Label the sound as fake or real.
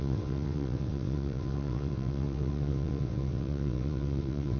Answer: fake